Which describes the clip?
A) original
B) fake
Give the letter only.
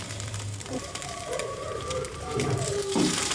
B